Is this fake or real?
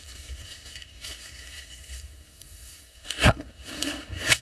fake